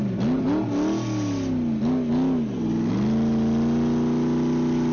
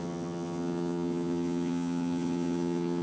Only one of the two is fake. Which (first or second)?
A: second